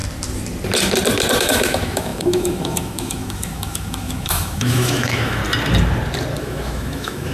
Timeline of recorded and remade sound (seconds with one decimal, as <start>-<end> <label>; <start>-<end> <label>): 0.0-1.4 recorded; 1.4-5.4 remade; 5.4-6.4 recorded; 6.4-7.3 remade